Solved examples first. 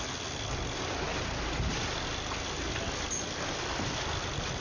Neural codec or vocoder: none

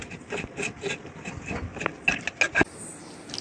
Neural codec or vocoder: none